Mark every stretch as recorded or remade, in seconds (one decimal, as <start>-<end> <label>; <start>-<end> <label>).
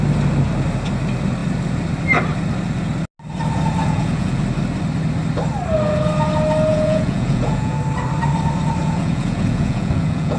0.0-3.8 recorded; 3.8-4.4 remade; 4.4-6.7 recorded; 6.7-7.8 remade; 7.8-8.8 recorded; 8.8-10.4 remade